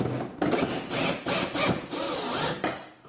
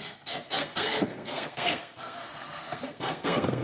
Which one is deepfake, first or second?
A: second